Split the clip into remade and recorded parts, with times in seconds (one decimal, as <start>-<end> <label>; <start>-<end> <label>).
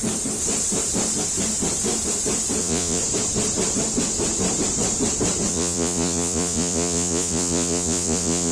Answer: 0.0-2.6 recorded; 2.6-3.0 remade; 3.0-5.5 recorded; 5.5-8.5 remade